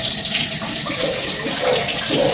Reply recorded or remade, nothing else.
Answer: remade